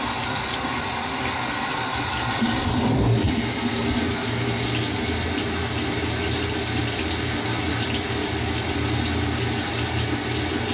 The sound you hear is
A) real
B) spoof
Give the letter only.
A